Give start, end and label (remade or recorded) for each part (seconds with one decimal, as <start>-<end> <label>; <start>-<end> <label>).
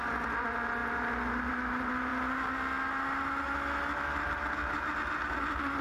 0.0-5.8 recorded